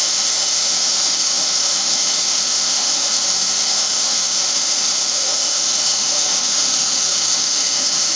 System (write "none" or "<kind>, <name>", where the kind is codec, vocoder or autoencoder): autoencoder, DAC-VAE